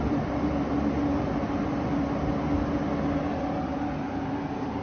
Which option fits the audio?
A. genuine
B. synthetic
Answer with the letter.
A